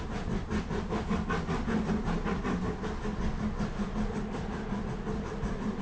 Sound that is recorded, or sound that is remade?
recorded